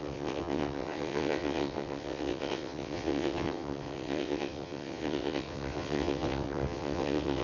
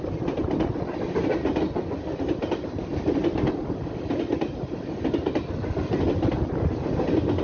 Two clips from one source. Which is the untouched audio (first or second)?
second